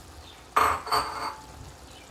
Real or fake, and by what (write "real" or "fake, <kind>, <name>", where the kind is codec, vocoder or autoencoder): real